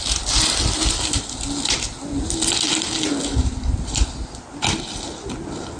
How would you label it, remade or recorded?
recorded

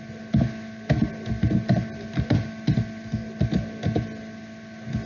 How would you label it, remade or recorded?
recorded